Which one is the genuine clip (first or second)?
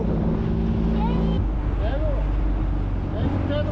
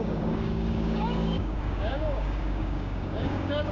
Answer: first